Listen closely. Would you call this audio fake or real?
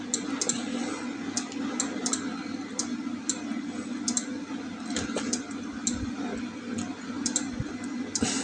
real